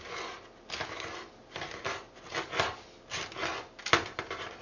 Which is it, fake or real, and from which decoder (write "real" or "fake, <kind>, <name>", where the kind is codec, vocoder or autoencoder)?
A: real